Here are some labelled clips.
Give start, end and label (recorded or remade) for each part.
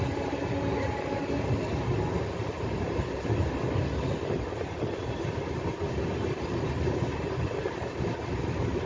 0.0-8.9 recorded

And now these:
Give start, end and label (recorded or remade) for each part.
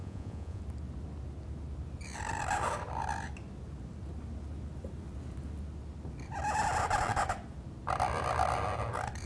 0.0-0.6 remade; 0.6-9.3 recorded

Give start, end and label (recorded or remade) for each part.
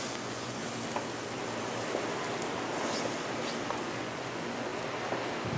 0.0-0.6 remade; 0.6-3.7 recorded; 3.7-4.7 remade; 4.7-5.6 recorded